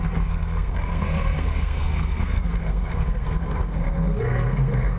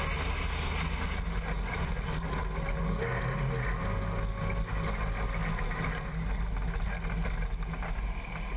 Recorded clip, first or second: second